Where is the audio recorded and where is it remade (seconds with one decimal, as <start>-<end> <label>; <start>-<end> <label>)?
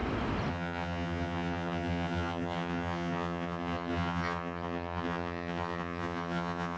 0.0-0.5 recorded; 0.5-6.8 remade